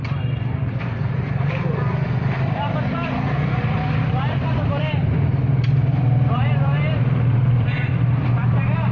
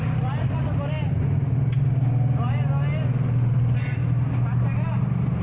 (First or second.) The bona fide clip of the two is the second